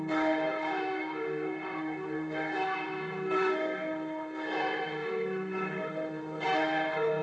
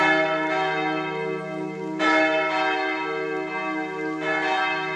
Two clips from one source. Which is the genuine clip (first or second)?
second